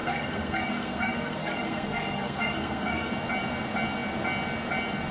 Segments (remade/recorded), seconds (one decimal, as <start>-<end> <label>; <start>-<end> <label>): 0.0-3.1 remade; 3.1-5.1 recorded